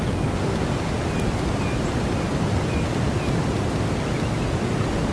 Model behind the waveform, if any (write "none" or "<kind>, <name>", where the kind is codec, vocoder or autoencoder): none